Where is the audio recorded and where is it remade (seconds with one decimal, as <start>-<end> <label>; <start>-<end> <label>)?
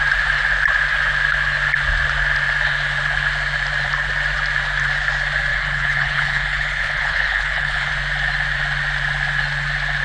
0.0-5.5 recorded; 5.5-7.9 remade; 7.9-10.0 recorded